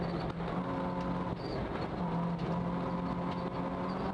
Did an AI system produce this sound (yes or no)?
no